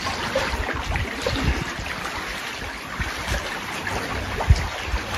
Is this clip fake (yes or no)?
no